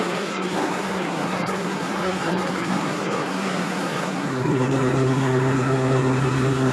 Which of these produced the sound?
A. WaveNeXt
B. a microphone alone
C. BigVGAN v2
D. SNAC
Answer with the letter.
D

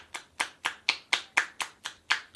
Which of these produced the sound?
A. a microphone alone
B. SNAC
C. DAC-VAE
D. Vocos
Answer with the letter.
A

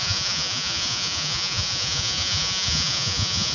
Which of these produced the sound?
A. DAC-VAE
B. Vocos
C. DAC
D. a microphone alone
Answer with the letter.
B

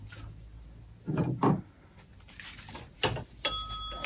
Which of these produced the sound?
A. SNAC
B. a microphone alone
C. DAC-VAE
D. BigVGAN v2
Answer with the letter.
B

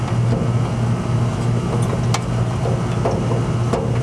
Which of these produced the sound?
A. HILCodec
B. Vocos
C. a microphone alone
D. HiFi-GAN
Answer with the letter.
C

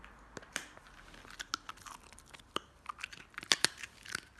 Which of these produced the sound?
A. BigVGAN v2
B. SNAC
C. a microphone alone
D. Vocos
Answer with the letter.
C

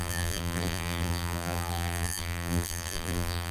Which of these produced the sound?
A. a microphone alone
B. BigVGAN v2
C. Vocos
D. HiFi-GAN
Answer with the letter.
B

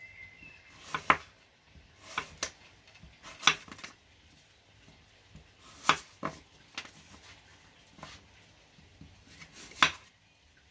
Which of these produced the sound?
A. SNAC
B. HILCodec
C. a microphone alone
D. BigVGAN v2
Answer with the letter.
C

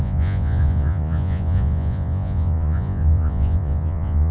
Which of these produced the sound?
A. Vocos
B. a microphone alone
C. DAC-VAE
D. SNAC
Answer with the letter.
A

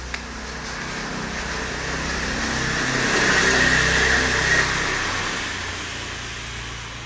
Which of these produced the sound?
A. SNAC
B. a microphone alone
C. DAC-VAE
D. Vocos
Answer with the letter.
B